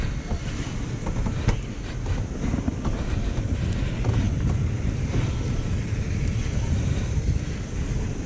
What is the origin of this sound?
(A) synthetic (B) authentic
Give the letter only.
B